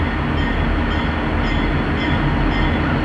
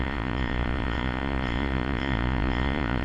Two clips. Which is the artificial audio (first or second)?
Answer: second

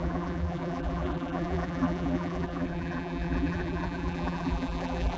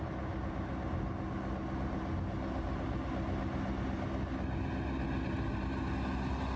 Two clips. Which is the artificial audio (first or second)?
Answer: first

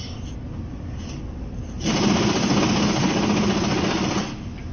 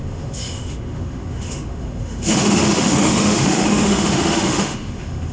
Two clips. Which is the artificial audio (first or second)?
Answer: second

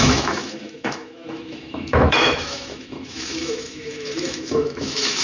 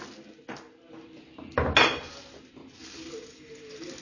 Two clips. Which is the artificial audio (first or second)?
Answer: first